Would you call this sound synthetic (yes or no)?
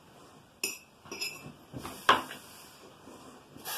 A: no